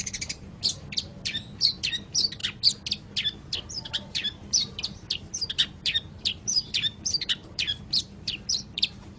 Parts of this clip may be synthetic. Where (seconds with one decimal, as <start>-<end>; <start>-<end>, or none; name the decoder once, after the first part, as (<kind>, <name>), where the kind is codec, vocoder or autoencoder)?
0.0-2.4 (vocoder, BigVGAN v2); 3.7-9.2